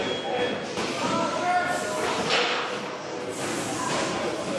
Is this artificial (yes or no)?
no